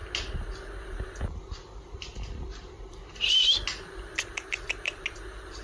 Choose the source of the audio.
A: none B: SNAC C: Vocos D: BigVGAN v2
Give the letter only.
A